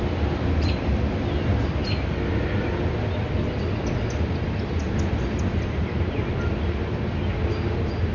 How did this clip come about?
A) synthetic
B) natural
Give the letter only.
B